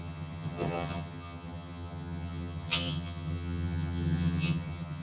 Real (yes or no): no